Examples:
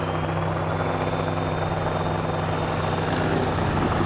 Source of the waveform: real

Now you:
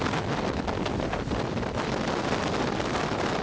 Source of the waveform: real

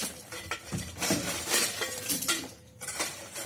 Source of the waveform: fake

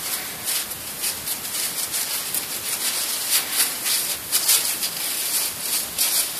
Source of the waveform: real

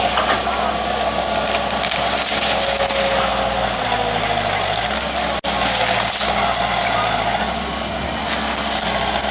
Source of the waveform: real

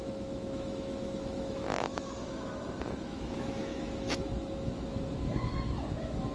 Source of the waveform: fake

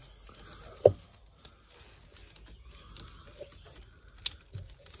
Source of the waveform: real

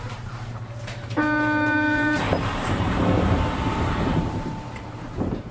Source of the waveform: fake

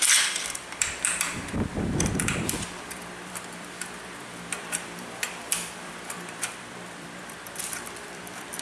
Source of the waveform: fake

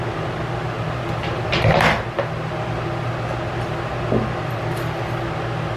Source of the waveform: real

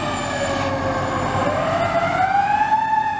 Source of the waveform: real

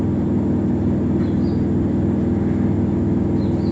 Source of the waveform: real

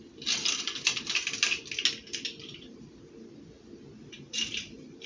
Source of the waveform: real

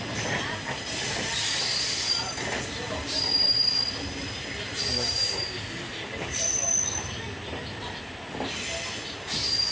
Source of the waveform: real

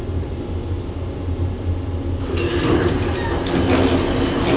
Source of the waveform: real